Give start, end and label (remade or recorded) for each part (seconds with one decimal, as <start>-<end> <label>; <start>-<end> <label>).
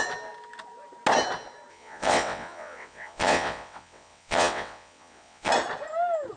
0.0-1.7 recorded; 1.7-5.5 remade; 5.5-6.4 recorded